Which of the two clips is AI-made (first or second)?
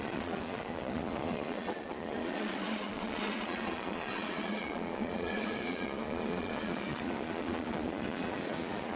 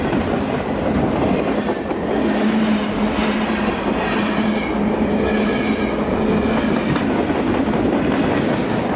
first